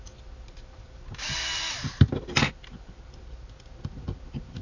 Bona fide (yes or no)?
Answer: yes